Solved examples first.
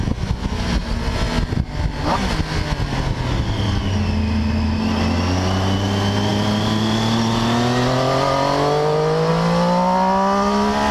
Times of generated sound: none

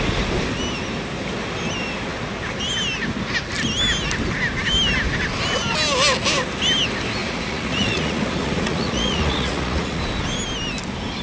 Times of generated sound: 7.2-10.0 (vocoder, Vocos)

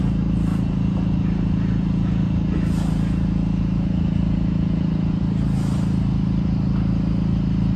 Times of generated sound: 0.5-5.2 (vocoder, Vocos)